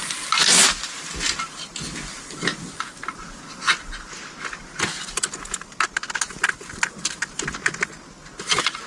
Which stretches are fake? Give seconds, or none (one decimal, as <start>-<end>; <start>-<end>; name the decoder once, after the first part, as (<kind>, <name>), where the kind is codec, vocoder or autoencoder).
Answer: none